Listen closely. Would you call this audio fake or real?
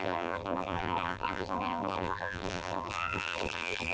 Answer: fake